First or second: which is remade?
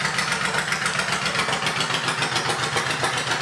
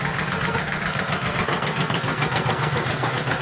second